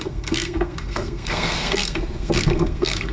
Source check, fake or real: fake